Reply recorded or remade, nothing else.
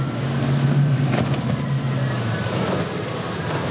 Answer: recorded